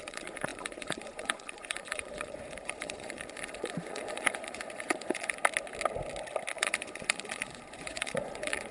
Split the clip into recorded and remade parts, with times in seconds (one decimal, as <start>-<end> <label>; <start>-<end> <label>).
0.0-5.4 remade; 5.4-6.5 recorded; 6.5-8.7 remade